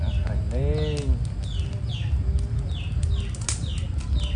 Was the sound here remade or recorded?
recorded